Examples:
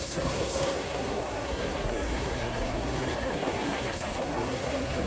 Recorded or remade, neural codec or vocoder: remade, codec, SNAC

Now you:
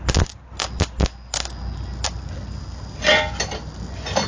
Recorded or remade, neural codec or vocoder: recorded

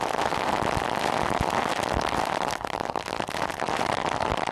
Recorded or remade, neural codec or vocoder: recorded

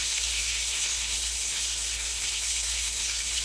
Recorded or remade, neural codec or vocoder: remade, codec, SNAC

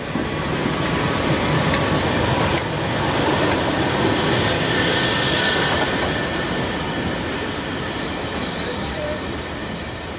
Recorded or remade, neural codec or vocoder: recorded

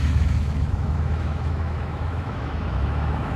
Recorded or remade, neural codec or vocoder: remade, autoencoder, DAC-VAE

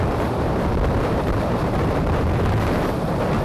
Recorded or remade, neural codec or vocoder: remade, vocoder, BigVGAN v2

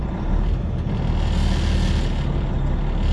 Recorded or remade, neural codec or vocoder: recorded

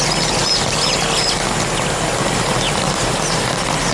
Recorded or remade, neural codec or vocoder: recorded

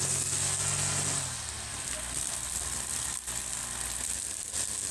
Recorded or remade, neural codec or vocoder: recorded